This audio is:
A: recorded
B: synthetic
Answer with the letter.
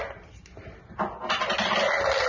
A